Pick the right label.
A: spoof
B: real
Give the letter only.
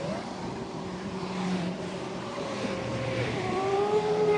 A